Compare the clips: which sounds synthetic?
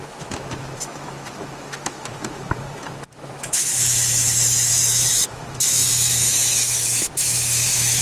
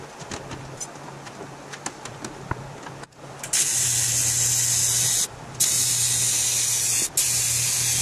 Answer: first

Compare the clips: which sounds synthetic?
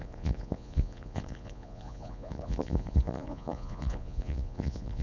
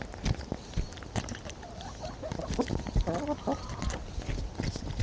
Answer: first